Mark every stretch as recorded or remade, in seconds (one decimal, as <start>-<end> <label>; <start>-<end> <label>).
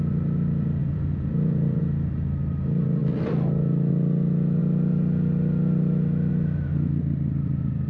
0.0-0.8 recorded; 0.8-1.8 remade; 1.8-7.9 recorded